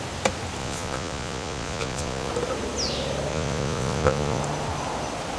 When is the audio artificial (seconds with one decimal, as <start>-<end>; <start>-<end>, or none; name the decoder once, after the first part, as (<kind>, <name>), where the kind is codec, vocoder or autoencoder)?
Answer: 0.6-2.3 (vocoder, Vocos); 3.3-4.4